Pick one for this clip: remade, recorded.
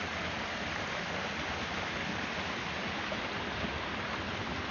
recorded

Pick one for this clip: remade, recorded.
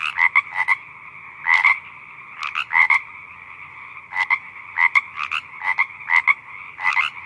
recorded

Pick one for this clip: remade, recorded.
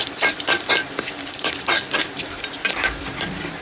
recorded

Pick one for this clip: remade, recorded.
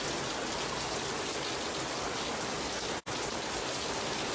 recorded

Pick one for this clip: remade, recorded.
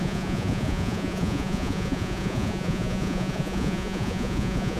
remade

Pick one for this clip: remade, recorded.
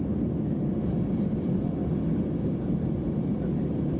recorded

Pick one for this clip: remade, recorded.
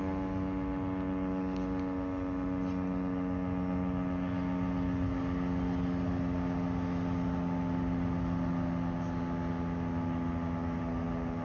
recorded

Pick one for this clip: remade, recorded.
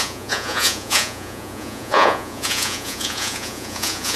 remade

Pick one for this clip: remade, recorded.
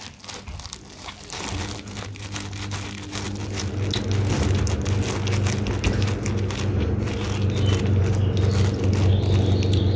recorded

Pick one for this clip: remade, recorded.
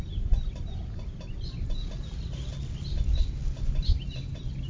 recorded